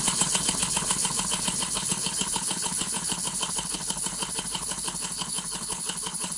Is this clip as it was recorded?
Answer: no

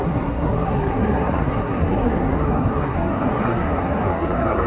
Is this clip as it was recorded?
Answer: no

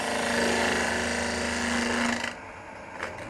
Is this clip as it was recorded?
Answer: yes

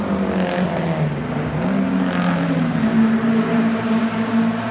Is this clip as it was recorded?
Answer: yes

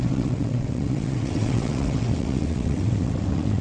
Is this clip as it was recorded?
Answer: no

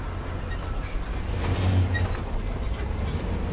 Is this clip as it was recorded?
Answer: yes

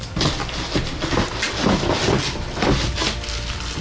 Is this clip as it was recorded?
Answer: yes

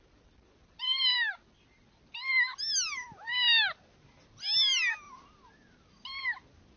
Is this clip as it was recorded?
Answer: yes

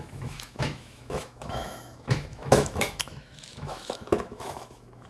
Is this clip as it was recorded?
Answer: no